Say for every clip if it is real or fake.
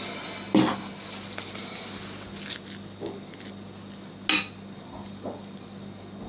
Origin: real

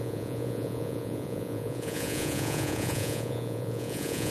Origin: fake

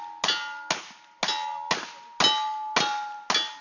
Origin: real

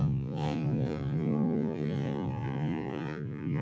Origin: fake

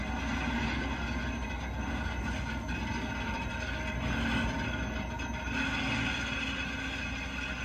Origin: real